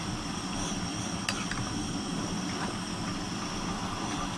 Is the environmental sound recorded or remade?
recorded